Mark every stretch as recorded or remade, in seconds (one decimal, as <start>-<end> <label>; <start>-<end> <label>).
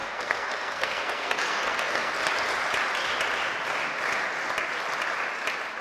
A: 0.0-2.3 remade; 2.3-5.8 recorded